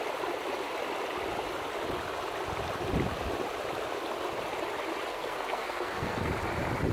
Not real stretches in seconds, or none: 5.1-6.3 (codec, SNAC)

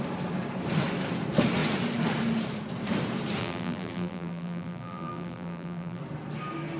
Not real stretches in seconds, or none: 3.4-6.0 (vocoder, BigVGAN v2)

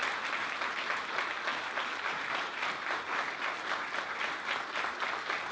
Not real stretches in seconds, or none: 0.0-0.7 (vocoder, BigVGAN v2); 1.5-3.5

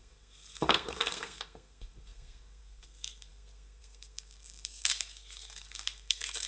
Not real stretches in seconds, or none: 0.0-6.5 (codec, SNAC)

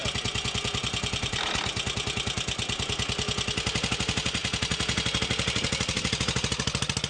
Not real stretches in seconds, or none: none

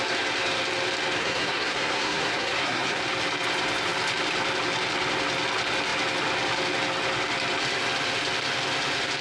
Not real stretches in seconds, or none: 1.2-3.0 (codec, SNAC)

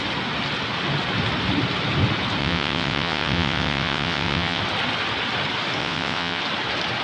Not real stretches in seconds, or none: 2.4-4.6 (vocoder, WaveNeXt); 5.8-6.4

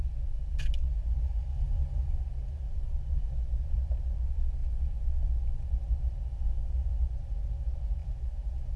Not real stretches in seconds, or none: 1.5-2.2 (vocoder, BigVGAN v2); 8.0-8.8